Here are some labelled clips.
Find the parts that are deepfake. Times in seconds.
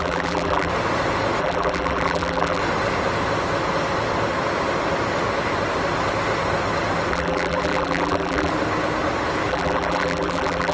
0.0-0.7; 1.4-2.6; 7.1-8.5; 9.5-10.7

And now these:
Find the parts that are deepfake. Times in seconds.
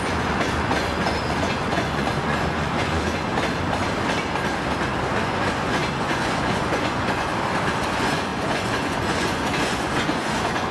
0.0-3.3; 5.2-7.3; 7.9-10.7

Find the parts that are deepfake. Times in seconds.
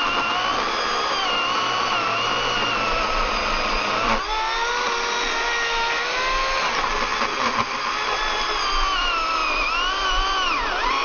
none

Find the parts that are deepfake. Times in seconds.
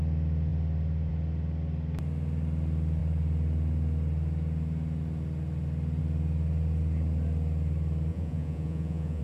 8.1-9.2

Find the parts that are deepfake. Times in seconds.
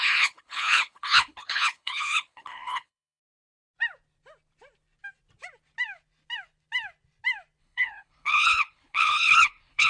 0.0-3.2; 7.6-9.9